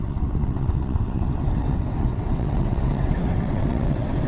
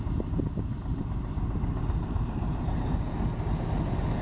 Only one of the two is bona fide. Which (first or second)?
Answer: second